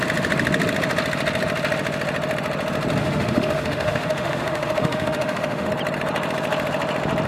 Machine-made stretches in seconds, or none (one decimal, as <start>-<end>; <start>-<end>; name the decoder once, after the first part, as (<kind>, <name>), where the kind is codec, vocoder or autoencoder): 3.0-5.7 (autoencoder, DAC-VAE)

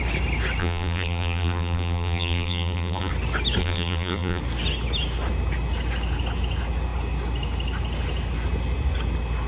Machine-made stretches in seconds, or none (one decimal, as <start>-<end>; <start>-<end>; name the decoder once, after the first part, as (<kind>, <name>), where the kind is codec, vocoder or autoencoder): 0.6-3.1 (vocoder, BigVGAN v2); 3.6-4.4

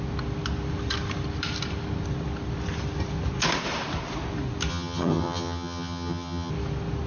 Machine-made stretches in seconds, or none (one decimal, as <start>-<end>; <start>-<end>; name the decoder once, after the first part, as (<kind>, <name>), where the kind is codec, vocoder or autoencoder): 4.7-6.5 (vocoder, HiFi-GAN)

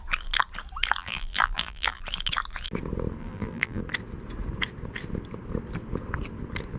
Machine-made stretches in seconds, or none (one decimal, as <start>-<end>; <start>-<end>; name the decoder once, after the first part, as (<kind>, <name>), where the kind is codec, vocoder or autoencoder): 1.0-2.0 (vocoder, BigVGAN v2); 3.2-3.8

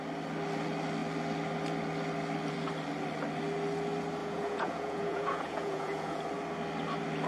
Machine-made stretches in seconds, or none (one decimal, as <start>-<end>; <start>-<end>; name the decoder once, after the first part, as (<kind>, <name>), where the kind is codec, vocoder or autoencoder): 4.2-6.2 (vocoder, Vocos)

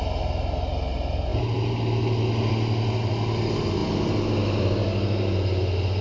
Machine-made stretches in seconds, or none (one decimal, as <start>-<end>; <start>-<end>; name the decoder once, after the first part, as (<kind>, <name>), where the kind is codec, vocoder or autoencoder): none

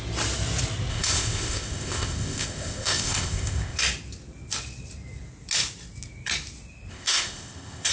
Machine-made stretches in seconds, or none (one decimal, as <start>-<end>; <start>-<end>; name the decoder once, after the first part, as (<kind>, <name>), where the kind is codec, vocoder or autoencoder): 0.9-3.8 (codec, ZipCodec); 6.9-7.9